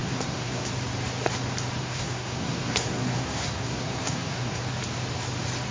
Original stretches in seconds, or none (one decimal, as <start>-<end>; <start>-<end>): 0.7-1.8; 4.6-5.7